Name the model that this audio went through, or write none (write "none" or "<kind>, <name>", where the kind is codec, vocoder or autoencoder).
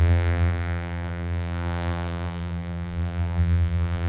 vocoder, BigVGAN v2